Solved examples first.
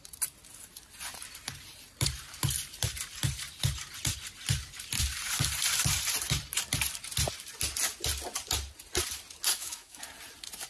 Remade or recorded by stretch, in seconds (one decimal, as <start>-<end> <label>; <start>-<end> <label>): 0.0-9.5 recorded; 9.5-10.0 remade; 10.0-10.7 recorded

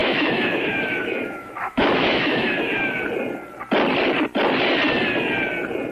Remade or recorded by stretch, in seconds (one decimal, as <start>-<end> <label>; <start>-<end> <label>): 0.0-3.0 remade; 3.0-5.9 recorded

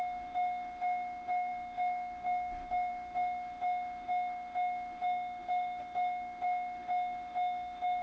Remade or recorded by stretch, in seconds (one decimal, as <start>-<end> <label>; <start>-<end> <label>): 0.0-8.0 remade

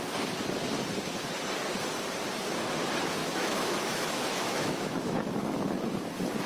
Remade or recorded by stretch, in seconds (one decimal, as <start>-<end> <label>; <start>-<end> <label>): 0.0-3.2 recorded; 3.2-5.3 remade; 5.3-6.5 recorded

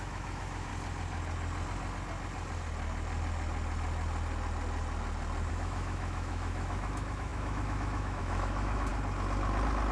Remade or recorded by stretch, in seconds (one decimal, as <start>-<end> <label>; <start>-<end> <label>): 0.0-0.7 remade; 0.7-5.5 recorded; 5.5-8.9 remade; 8.9-9.9 recorded